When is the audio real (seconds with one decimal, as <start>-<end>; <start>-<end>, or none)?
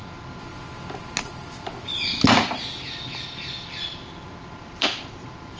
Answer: 0.0-5.6